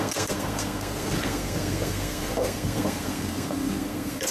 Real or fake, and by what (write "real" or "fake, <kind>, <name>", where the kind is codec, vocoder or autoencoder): fake, codec, SNAC